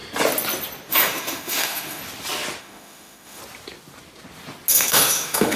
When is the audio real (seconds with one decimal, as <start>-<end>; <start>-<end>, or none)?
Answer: 0.0-0.9; 2.0-2.6; 3.4-4.7